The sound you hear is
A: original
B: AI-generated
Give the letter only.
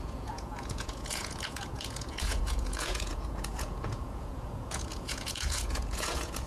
B